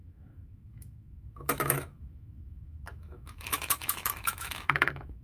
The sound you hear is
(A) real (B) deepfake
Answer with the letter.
B